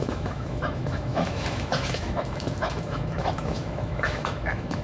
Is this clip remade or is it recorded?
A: remade